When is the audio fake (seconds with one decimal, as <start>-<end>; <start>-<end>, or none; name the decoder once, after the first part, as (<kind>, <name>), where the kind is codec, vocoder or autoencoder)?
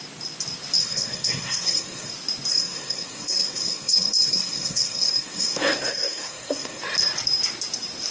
0.8-2.1 (codec, SNAC); 2.5-6.8